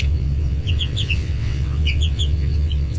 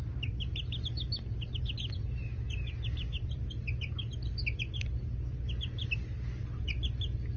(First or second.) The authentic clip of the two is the second